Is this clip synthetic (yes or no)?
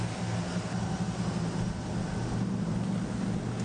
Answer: no